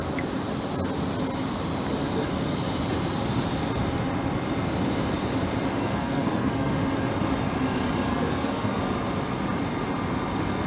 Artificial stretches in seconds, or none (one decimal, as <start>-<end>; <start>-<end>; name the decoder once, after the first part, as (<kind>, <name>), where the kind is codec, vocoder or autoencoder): 5.8-6.7 (codec, SNAC); 8.1-8.8